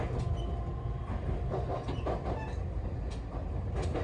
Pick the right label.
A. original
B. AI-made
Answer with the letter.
A